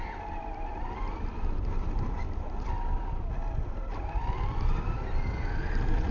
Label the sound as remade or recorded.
recorded